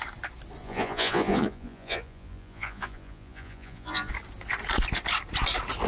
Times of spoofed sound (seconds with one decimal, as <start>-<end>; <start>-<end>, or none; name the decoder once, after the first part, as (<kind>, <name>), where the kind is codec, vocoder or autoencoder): 0.6-4.1 (vocoder, Vocos)